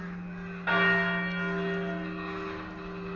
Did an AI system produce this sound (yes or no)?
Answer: no